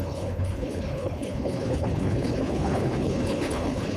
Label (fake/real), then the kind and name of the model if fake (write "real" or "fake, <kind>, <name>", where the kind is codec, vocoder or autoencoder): fake, codec, HILCodec